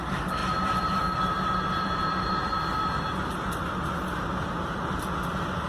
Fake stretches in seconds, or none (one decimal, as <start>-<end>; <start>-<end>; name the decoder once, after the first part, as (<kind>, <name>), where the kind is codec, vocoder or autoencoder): 0.4-2.5 (vocoder, BigVGAN v2)